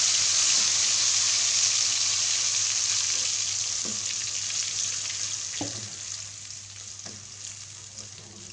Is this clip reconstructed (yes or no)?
no